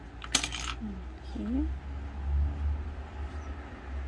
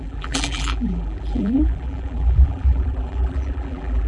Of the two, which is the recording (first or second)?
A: first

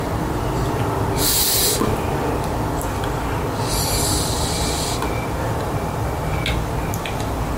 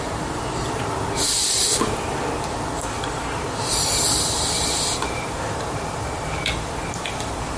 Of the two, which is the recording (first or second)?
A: first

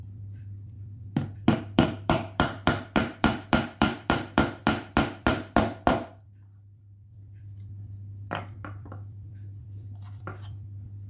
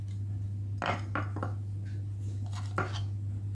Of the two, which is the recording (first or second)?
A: second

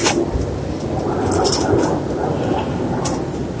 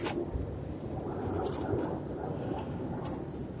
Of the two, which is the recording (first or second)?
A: first